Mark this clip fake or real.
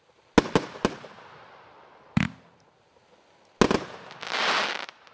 real